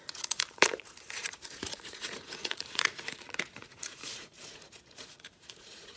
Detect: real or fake fake